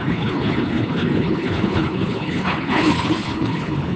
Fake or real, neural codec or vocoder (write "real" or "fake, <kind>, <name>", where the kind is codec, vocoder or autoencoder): fake, codec, HILCodec